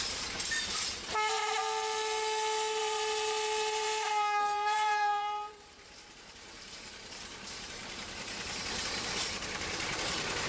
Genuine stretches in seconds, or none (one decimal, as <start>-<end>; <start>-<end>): 1.6-2.8